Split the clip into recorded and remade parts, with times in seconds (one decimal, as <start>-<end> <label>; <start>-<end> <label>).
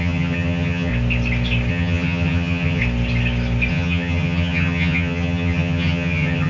0.0-0.9 remade; 0.9-1.7 recorded; 1.7-2.8 remade; 2.8-3.7 recorded; 3.7-6.5 remade